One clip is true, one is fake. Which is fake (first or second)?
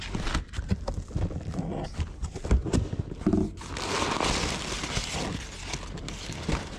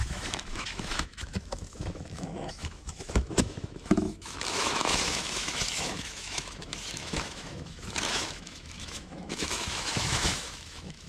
second